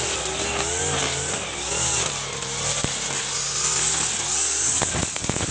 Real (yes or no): yes